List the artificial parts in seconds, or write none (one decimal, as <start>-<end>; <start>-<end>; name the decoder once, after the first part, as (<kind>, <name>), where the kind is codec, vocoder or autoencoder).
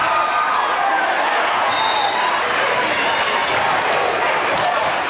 2.6-3.4 (vocoder, BigVGAN v2); 4.0-5.1